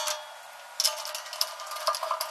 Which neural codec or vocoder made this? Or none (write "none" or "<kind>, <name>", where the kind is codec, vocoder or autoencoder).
none